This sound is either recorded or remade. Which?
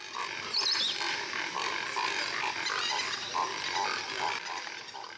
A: recorded